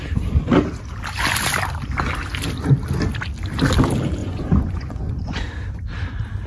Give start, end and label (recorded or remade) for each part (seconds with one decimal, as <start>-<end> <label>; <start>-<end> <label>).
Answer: 0.0-4.2 recorded; 4.2-5.5 remade; 5.5-6.5 recorded